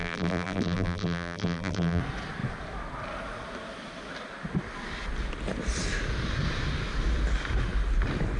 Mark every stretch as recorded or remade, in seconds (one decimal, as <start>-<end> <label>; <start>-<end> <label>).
0.0-2.0 remade; 2.0-8.4 recorded